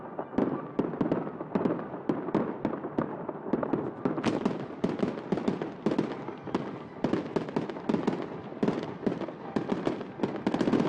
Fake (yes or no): no